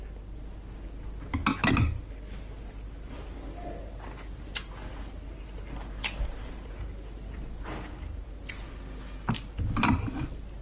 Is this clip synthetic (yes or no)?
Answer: no